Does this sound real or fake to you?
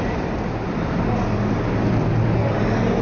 real